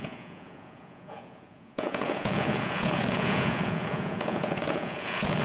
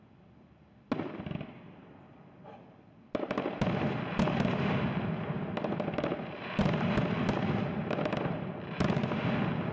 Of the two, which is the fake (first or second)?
first